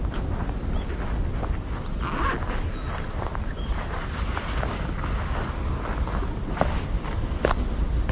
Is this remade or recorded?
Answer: recorded